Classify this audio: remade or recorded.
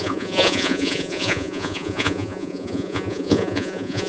remade